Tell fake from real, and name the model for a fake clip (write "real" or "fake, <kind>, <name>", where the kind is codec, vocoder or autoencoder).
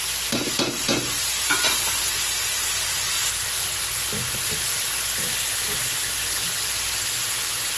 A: real